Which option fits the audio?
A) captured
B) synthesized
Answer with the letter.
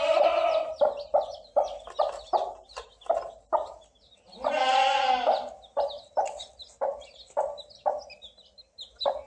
A